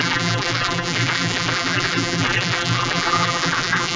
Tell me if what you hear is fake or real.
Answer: fake